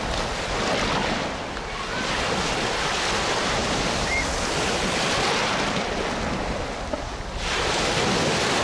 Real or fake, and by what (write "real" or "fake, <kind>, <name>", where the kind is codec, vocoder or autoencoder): real